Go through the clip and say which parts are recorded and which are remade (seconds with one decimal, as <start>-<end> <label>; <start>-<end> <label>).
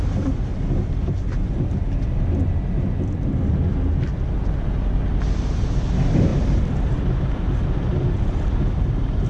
0.0-0.5 remade; 0.5-5.4 recorded; 5.4-9.3 remade